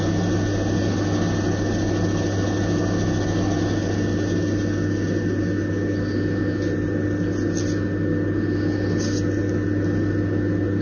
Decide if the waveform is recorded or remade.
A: recorded